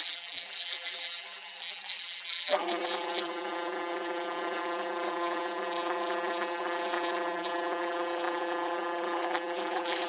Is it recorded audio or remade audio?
remade